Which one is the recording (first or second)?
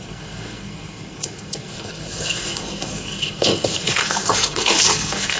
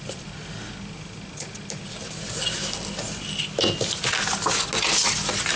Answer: second